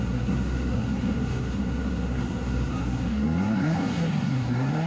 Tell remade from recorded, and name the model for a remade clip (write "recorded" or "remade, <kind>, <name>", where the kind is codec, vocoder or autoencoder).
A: remade, codec, SNAC